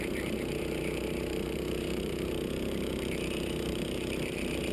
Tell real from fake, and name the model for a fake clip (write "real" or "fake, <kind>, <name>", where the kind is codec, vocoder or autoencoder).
fake, vocoder, BigVGAN v2